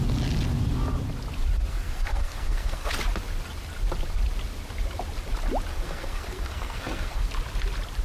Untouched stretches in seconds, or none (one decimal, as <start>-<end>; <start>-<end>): 0.0-1.7; 2.9-5.7; 7.3-8.0